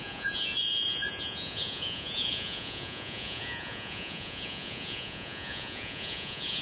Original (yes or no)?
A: no